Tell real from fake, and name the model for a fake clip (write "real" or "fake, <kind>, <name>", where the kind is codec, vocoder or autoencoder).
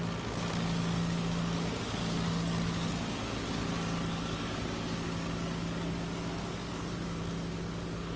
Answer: fake, codec, DAC